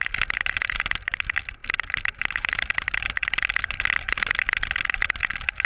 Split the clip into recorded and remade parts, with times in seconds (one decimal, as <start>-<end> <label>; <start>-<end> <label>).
0.0-3.2 remade; 3.2-5.7 recorded